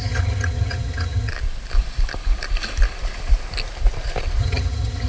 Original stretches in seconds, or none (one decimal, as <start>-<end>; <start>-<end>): 1.3-4.4